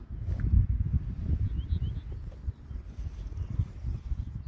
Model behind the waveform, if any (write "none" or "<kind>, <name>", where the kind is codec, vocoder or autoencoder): none